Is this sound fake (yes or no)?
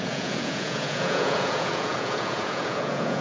yes